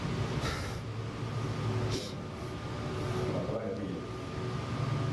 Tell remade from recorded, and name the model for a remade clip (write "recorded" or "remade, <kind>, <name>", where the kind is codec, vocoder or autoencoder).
recorded